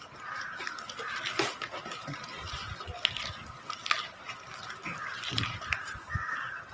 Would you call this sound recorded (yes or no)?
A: yes